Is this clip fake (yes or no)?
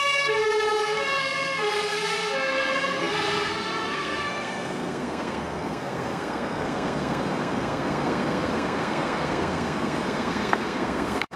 yes